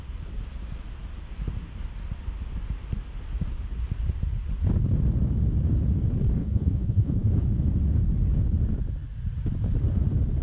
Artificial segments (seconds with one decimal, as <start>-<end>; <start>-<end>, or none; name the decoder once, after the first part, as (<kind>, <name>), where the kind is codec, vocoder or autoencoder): 6.4-7.3 (vocoder, Vocos)